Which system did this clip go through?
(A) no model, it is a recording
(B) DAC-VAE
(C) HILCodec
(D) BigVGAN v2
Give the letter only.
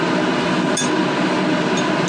A